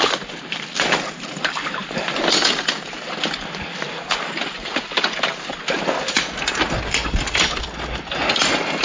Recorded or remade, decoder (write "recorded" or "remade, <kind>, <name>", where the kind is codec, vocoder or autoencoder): recorded